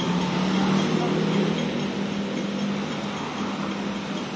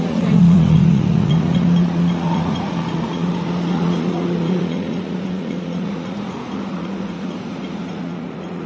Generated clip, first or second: second